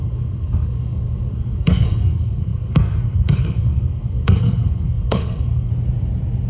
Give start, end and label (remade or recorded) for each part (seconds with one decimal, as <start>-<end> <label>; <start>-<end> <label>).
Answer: 0.0-5.7 remade; 5.7-6.5 recorded

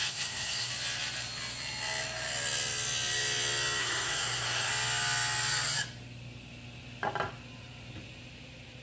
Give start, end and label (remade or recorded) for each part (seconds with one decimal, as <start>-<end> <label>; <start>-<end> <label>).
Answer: 0.0-0.7 remade; 0.7-3.8 recorded; 3.8-4.7 remade; 4.7-8.8 recorded